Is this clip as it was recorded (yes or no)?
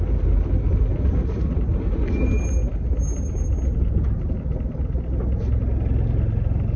yes